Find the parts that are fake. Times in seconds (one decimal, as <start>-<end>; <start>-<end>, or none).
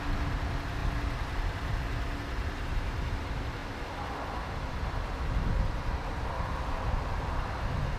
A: none